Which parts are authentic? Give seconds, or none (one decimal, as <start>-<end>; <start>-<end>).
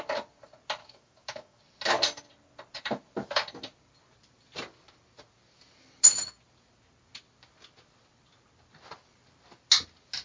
0.0-0.8; 1.6-10.2